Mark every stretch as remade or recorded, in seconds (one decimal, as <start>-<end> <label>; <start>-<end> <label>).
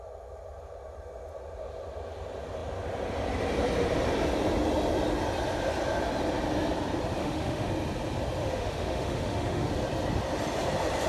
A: 0.0-7.2 recorded; 7.2-7.7 remade; 7.7-8.4 recorded; 8.4-9.7 remade; 9.7-11.1 recorded